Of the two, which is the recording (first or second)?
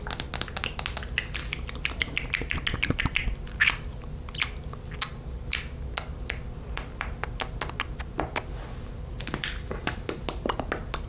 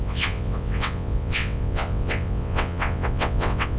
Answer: first